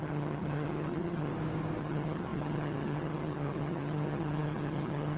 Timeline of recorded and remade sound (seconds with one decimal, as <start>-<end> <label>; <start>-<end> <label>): 0.0-1.3 remade; 1.3-1.8 recorded; 1.8-5.2 remade

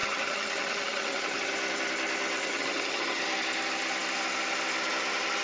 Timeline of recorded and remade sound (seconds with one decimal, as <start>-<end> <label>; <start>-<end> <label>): 0.0-1.5 remade; 1.5-2.4 recorded; 2.4-3.2 remade; 3.2-5.4 recorded

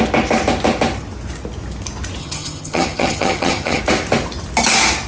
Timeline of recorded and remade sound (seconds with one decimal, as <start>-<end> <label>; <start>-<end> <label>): 0.0-2.2 recorded; 2.2-3.8 remade; 3.8-5.1 recorded

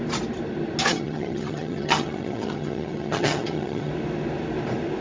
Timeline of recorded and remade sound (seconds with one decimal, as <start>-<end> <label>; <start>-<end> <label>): 0.0-0.9 recorded; 0.9-3.9 remade; 3.9-5.0 recorded

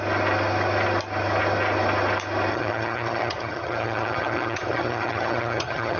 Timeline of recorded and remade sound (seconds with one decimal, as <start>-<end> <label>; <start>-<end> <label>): 0.0-2.5 recorded; 2.5-6.0 remade

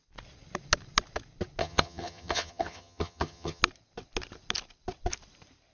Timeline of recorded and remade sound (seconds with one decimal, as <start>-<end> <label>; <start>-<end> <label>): 0.0-1.6 recorded; 1.6-3.6 remade; 3.6-5.7 recorded

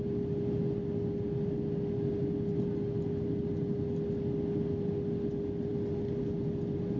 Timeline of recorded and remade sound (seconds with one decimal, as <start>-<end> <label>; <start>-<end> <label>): 0.0-7.0 recorded

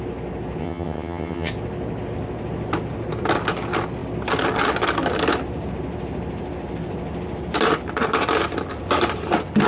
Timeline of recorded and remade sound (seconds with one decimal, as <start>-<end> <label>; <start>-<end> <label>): 0.0-0.6 recorded; 0.6-1.5 remade; 1.5-9.7 recorded